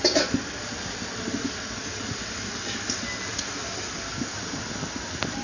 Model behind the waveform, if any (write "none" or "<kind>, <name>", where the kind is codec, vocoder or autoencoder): none